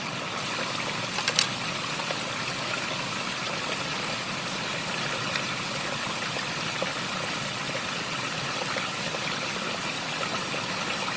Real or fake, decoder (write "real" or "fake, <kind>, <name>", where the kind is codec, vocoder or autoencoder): real